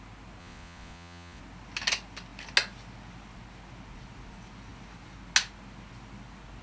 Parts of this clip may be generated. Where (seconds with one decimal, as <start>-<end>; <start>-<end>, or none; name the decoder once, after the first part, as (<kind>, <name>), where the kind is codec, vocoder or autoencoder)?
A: 0.4-1.4 (vocoder, Vocos)